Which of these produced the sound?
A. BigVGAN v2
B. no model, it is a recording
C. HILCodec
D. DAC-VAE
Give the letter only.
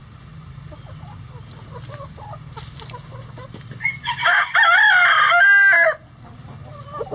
B